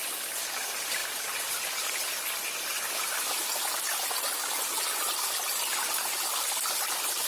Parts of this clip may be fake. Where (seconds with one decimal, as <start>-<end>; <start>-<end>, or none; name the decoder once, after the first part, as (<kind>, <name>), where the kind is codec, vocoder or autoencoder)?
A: none